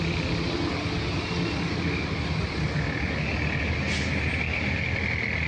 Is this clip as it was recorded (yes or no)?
yes